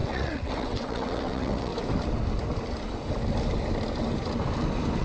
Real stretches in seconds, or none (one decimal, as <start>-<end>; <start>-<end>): 1.7-5.0